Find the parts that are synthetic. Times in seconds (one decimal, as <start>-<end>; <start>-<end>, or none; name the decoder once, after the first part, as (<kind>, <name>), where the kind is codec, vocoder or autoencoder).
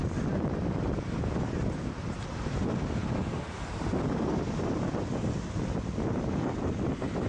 0.0-3.0 (vocoder, BigVGAN v2); 6.5-7.3